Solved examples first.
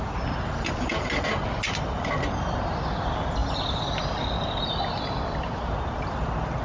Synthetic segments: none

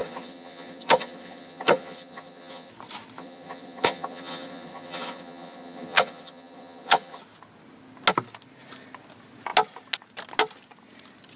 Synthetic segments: 0.0-2.7 (vocoder, HiFi-GAN); 3.2-7.2

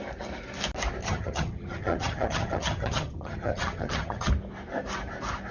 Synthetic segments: 1.0-4.3 (vocoder, HiFi-GAN)

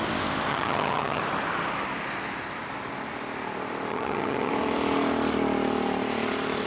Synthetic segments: 0.5-1.2 (vocoder, HiFi-GAN); 3.9-4.5

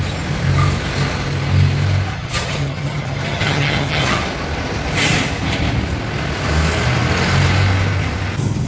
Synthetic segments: 2.1-4.2 (vocoder, HiFi-GAN)

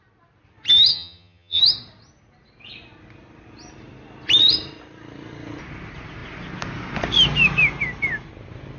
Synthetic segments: 0.9-1.6 (vocoder, HiFi-GAN)